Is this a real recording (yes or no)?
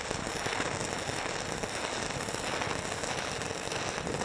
yes